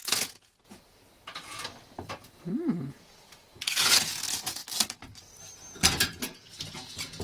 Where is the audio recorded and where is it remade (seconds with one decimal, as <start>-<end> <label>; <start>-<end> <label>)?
0.0-4.6 remade; 4.6-6.0 recorded; 6.0-7.2 remade